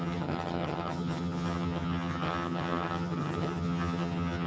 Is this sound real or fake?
fake